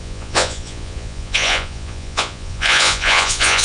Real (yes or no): no